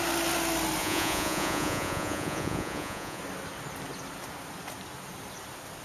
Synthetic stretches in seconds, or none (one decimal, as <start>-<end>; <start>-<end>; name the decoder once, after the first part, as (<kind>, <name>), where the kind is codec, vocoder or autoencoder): 0.8-3.2 (vocoder, Vocos)